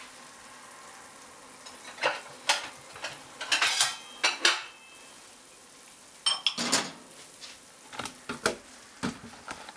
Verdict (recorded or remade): recorded